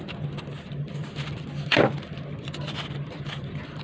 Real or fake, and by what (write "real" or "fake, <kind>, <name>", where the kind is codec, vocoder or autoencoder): real